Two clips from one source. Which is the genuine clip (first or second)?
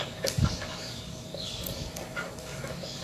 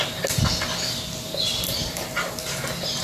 second